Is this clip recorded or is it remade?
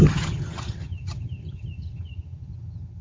remade